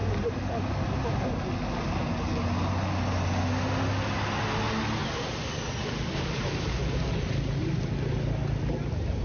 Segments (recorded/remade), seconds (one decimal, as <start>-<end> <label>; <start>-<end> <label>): 0.0-9.2 recorded